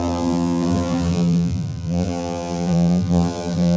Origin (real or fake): fake